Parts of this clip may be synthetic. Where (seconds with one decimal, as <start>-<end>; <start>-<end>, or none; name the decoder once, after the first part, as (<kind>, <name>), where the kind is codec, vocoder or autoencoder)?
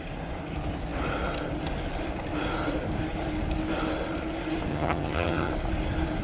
4.7-5.5 (vocoder, HiFi-GAN)